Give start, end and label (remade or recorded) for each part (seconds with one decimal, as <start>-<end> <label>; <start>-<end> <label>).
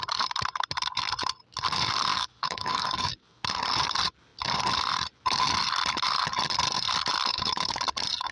0.0-2.1 recorded; 2.1-3.1 remade; 3.1-7.3 recorded; 7.3-7.8 remade; 7.8-8.3 recorded